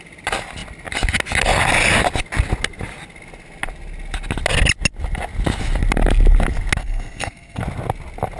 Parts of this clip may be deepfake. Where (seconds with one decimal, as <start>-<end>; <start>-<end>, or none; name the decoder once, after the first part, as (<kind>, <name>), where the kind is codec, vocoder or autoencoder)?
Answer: 6.8-7.6 (codec, SNAC)